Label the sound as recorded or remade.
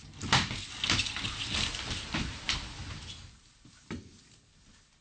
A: recorded